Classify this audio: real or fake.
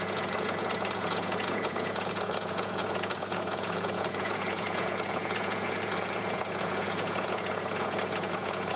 fake